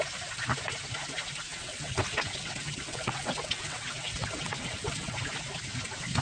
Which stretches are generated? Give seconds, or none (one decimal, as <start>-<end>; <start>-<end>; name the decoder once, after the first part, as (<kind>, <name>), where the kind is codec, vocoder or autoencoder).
1.5-5.2 (vocoder, WaveNeXt)